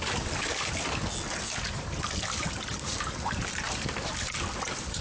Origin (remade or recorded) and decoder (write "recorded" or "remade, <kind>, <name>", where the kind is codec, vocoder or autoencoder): recorded